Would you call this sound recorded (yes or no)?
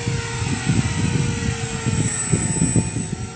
yes